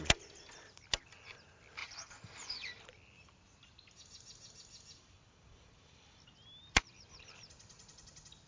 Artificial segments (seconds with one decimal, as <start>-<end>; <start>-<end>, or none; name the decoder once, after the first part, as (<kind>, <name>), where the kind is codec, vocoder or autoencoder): none